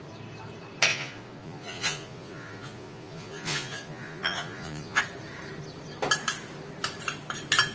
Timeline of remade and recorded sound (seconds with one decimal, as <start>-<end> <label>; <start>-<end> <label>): 0.0-0.9 recorded; 0.9-5.0 remade; 5.0-7.7 recorded